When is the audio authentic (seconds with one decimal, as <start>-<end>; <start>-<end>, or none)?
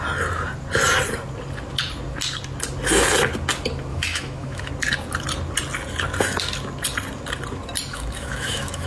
0.0-3.9; 4.7-7.9